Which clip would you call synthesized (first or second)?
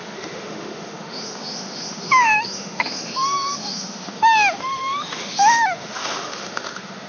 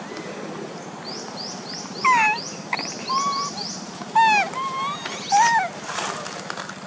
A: first